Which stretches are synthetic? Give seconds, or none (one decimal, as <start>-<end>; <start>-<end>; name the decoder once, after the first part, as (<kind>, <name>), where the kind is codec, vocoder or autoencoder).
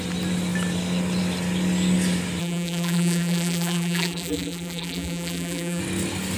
2.4-5.8 (vocoder, BigVGAN v2)